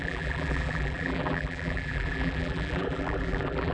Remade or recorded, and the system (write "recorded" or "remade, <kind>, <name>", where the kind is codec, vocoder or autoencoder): remade, vocoder, BigVGAN v2